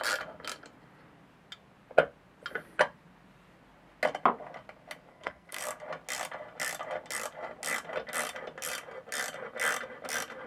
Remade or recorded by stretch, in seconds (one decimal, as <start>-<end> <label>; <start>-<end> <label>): 0.0-5.1 recorded; 5.1-5.6 remade; 5.6-10.5 recorded